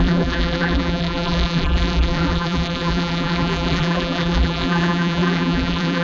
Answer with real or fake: fake